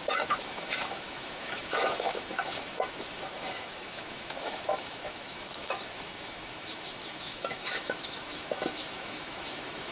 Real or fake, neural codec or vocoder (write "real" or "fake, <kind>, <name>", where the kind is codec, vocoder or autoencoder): fake, autoencoder, DAC-VAE